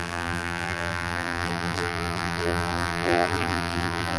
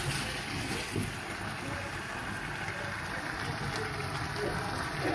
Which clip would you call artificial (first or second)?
first